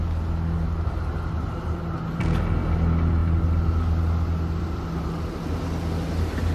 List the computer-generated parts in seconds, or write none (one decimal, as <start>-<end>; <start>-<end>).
none